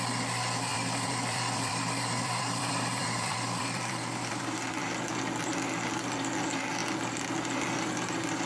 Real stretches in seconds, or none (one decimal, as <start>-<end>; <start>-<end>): 0.0-0.7; 5.0-8.5